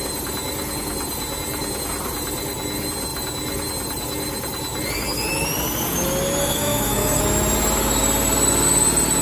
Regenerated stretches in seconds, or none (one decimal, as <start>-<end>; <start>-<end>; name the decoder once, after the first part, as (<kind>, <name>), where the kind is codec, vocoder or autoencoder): 6.4-7.2 (codec, SNAC)